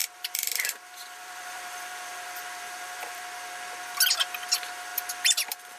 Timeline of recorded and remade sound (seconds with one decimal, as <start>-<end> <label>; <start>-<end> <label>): 0.0-3.2 remade; 3.2-5.8 recorded